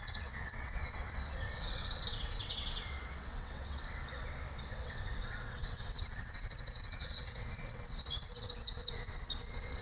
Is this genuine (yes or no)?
no